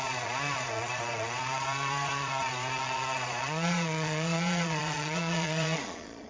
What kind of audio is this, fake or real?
fake